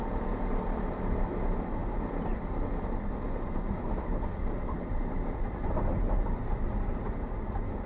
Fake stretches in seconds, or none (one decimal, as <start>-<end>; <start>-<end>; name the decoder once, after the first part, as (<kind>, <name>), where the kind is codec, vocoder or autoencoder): none